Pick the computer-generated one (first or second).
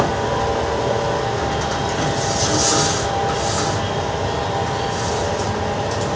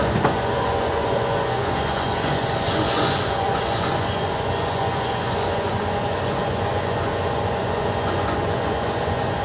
second